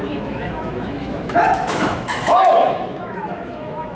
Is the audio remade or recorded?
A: remade